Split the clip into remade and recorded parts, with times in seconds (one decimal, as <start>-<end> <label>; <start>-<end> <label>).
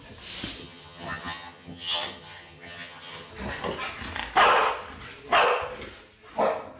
0.0-0.6 recorded; 0.6-3.3 remade; 3.3-6.8 recorded